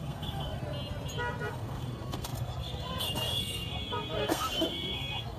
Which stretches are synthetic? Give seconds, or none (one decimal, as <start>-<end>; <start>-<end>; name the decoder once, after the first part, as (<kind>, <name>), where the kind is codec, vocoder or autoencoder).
0.0-0.6 (codec, SNAC); 1.5-5.4